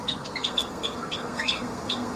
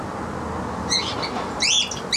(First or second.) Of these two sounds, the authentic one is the second